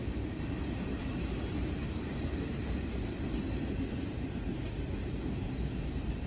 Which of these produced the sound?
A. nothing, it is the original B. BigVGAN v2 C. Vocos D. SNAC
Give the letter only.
B